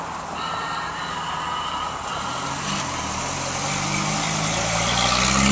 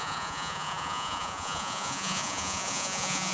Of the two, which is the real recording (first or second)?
first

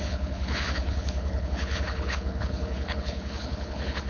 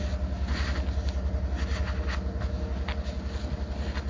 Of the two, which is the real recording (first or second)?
second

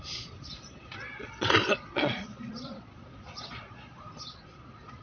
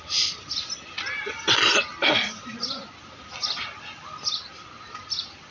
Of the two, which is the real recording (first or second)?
second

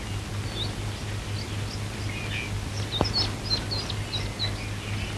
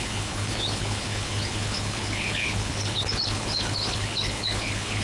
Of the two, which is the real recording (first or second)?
first